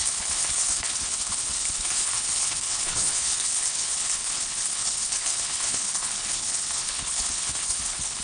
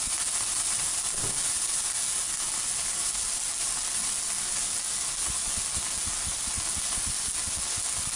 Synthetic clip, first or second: first